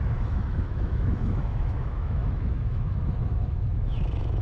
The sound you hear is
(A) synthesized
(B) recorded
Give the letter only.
A